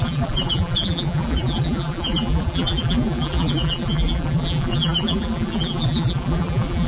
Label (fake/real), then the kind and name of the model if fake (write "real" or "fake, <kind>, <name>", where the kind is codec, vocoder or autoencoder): fake, vocoder, BigVGAN v2